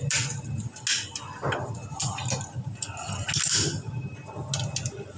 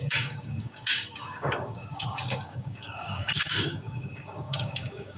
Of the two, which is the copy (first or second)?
second